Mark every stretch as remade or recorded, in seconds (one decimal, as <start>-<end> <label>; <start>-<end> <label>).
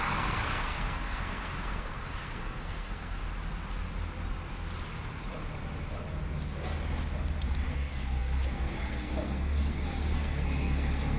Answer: 0.0-3.2 remade; 3.2-7.7 recorded; 7.7-11.2 remade